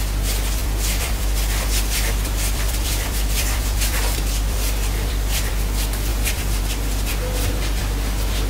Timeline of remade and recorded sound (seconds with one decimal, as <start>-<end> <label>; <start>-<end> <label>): 0.0-0.6 recorded; 0.6-5.5 remade; 5.5-6.1 recorded; 6.1-6.6 remade; 6.6-8.5 recorded